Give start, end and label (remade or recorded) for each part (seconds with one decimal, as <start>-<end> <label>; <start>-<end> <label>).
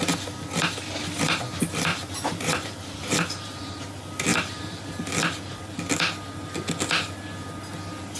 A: 0.0-1.9 recorded; 1.9-3.8 remade; 3.8-4.3 recorded; 4.3-4.8 remade; 4.8-8.2 recorded